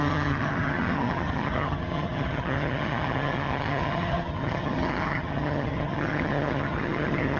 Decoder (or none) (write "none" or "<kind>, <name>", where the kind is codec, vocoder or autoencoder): vocoder, HiFi-GAN